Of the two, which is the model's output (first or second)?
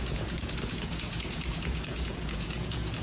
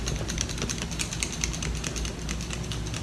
first